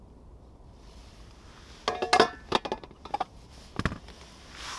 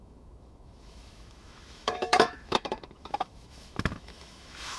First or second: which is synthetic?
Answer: second